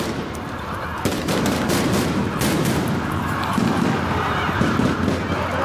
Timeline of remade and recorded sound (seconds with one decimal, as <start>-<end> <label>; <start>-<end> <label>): 0.0-1.1 recorded; 1.1-4.5 remade; 4.5-5.6 recorded